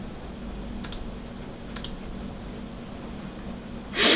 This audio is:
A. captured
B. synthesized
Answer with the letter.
A